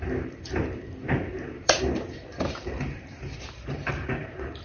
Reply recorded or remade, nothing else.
remade